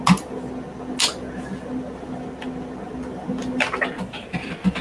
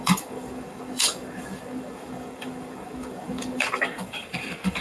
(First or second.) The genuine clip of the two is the first